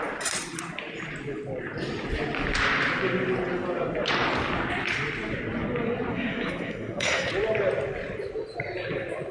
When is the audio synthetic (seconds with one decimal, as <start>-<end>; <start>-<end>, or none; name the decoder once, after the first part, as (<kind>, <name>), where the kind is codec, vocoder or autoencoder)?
6.1-7.3 (codec, SNAC)